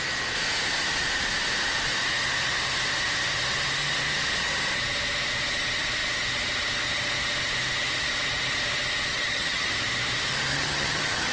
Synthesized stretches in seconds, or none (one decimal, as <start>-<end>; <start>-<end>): 9.1-9.7; 10.5-11.3